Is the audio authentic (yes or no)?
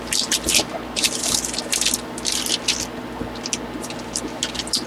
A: yes